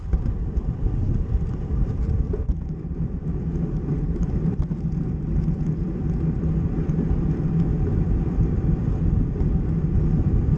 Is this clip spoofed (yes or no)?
yes